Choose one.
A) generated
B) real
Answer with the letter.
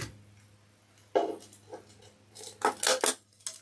B